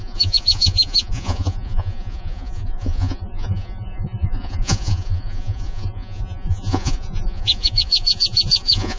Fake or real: fake